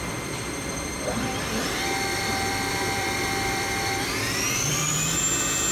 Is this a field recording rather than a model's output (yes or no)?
no